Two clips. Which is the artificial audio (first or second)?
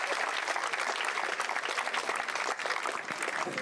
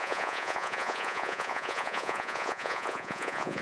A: second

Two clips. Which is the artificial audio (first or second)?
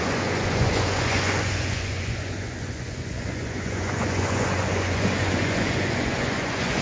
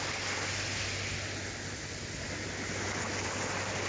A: first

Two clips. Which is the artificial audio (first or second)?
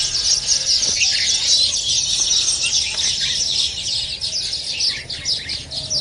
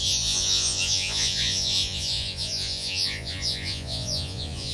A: second